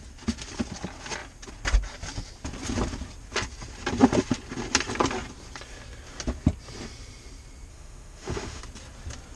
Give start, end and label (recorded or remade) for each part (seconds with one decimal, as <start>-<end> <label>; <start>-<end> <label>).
0.0-7.7 recorded; 7.7-8.6 remade; 8.6-9.4 recorded